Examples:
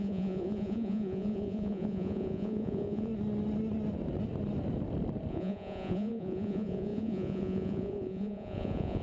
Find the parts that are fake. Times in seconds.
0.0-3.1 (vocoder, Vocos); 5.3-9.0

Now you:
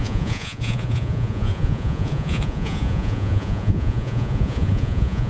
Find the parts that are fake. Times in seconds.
0.0-5.3 (vocoder, Vocos)

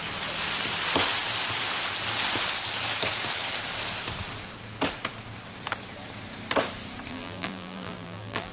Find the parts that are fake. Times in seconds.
7.1-8.5 (vocoder, BigVGAN v2)